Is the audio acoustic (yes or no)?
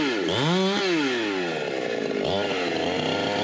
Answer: yes